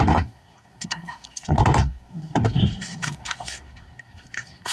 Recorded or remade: remade